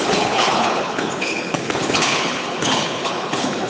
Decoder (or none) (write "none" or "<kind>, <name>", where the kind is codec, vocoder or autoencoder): codec, HILCodec